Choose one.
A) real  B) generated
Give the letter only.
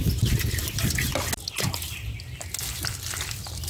A